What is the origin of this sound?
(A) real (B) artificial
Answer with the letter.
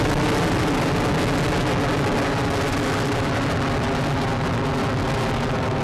A